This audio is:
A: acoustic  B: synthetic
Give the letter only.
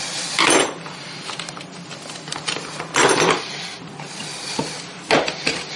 A